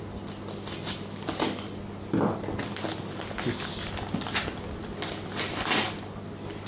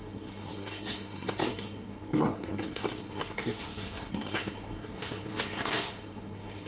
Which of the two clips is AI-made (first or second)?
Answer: second